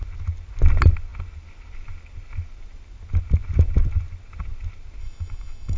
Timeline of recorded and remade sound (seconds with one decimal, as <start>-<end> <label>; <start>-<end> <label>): 0.0-5.0 recorded; 5.0-5.8 remade